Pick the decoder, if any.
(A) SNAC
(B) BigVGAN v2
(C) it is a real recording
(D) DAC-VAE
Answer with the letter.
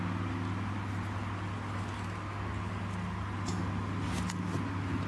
C